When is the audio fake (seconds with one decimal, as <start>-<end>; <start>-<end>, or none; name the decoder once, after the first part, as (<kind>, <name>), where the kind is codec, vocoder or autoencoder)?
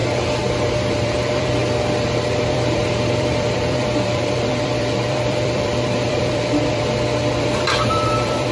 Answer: 0.9-1.6 (vocoder, BigVGAN v2); 2.5-8.5